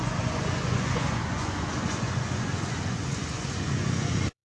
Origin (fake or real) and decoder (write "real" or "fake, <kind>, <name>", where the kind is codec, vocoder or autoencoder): fake, vocoder, Vocos